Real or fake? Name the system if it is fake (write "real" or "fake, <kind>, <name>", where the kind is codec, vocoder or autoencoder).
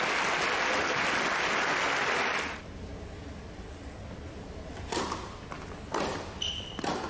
real